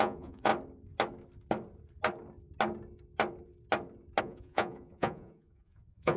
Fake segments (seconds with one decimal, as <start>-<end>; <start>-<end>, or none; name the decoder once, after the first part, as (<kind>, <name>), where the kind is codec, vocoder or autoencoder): 0.0-0.5 (vocoder, Vocos); 4.2-6.2